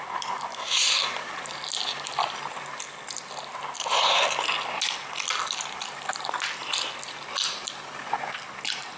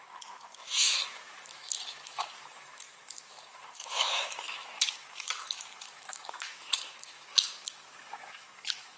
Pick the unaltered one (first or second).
first